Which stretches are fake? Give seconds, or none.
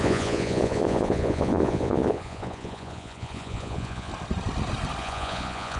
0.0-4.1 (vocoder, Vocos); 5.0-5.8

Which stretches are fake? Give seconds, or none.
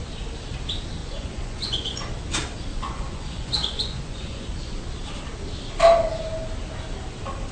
1.0-2.1 (vocoder, Vocos); 2.7-4.8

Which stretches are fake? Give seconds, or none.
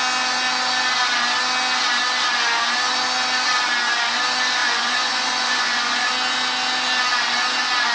4.6-6.1 (vocoder, Vocos)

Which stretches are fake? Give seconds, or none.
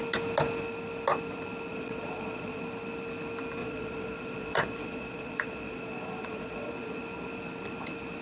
1.7-2.6 (vocoder, Vocos); 3.6-6.7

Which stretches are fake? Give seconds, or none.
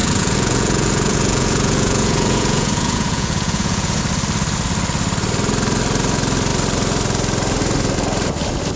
0.0-4.0 (vocoder, Vocos)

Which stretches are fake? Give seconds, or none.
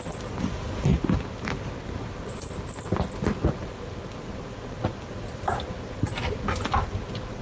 none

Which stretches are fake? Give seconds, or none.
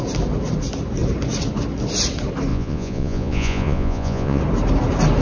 2.5-4.4 (vocoder, Vocos)